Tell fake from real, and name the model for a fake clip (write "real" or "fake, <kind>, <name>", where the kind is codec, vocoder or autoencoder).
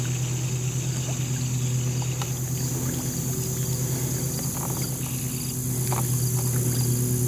real